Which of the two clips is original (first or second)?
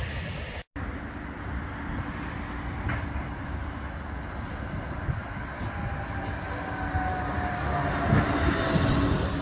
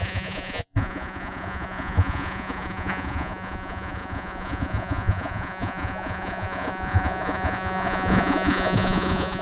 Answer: first